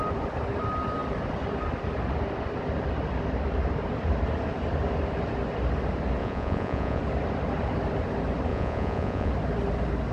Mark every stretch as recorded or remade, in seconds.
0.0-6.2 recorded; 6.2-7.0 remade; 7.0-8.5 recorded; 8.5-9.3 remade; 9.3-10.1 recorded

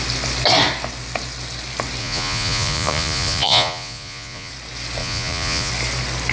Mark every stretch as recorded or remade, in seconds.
0.0-2.0 recorded; 2.0-4.5 remade; 4.5-5.0 recorded; 5.0-5.7 remade; 5.7-6.3 recorded